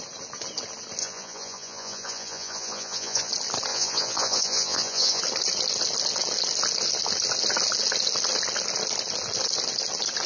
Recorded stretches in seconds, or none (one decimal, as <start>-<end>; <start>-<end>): 0.0-1.0; 3.3-3.7; 5.2-10.3